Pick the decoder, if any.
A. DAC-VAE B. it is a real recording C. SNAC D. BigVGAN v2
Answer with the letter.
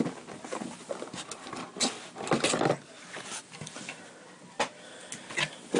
B